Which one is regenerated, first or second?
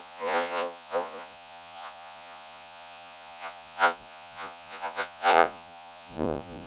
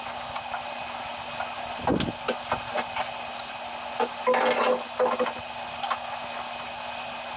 first